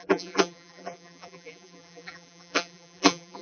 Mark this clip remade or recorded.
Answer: remade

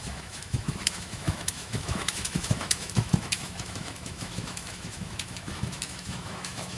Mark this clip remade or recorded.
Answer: remade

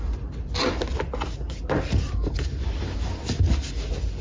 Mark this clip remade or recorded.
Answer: recorded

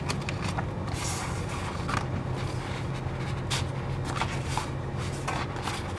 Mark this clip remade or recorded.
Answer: recorded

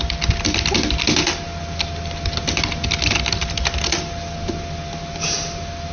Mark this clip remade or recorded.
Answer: recorded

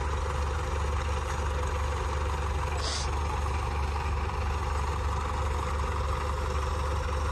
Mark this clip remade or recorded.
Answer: recorded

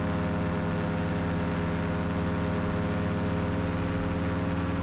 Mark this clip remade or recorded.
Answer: recorded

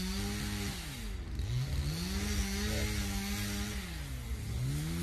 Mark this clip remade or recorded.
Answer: recorded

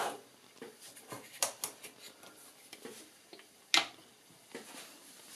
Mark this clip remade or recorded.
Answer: recorded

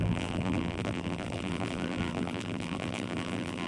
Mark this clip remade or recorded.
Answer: remade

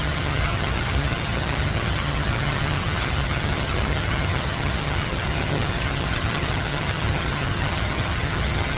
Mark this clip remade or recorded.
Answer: remade